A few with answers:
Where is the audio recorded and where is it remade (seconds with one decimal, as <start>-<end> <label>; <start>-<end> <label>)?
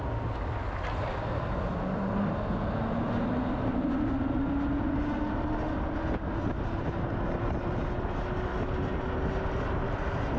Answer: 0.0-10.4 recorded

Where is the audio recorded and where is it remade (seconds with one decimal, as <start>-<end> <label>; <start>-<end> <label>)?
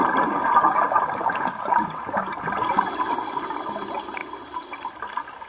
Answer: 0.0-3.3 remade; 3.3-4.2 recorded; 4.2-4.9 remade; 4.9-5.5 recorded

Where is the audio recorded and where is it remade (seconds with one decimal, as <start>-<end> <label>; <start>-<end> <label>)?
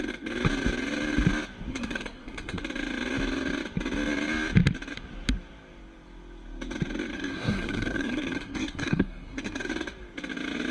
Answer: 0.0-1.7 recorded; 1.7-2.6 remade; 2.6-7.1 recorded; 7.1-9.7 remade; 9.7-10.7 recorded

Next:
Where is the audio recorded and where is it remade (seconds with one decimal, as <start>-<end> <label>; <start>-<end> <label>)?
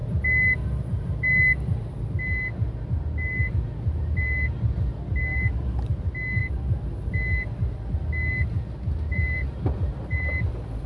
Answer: 0.0-5.3 recorded; 5.3-5.9 remade; 5.9-6.4 recorded; 6.4-7.1 remade; 7.1-9.1 recorded; 9.1-10.9 remade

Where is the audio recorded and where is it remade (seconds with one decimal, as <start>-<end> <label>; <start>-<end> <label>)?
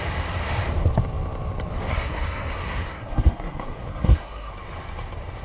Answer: 0.0-1.9 recorded; 1.9-4.5 remade; 4.5-5.4 recorded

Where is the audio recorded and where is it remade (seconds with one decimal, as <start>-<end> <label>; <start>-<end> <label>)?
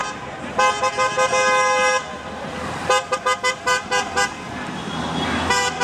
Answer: 0.0-5.8 recorded